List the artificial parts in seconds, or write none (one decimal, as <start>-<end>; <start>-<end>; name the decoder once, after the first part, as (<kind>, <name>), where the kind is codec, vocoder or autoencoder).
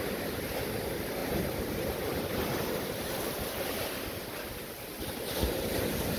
none